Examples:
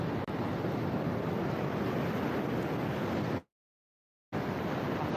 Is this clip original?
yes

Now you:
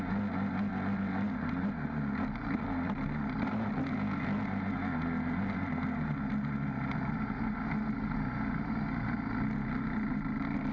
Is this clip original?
yes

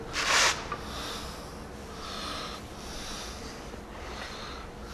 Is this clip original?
yes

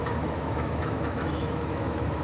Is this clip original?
no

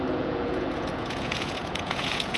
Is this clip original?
no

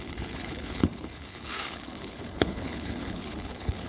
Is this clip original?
no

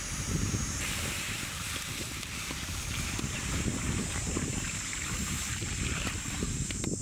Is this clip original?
no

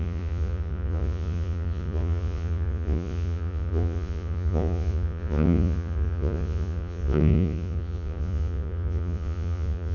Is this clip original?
no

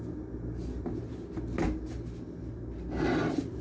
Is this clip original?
yes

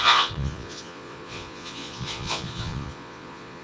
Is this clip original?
no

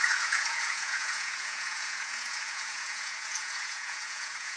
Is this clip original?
no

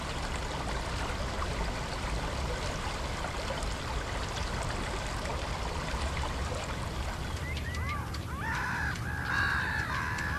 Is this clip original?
yes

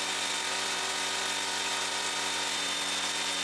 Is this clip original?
yes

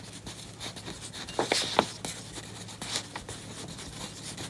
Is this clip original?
yes